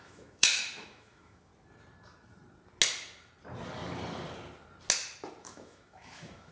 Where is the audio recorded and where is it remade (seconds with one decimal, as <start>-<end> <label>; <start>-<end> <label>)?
0.0-1.5 remade; 1.5-5.4 recorded; 5.4-6.5 remade